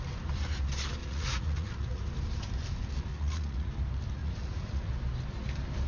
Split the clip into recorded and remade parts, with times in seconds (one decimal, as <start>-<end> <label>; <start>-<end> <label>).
0.0-1.0 recorded; 1.0-2.0 remade; 2.0-3.1 recorded; 3.1-3.7 remade; 3.7-4.2 recorded; 4.2-4.9 remade; 4.9-5.9 recorded